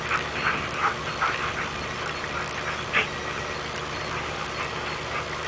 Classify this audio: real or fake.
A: real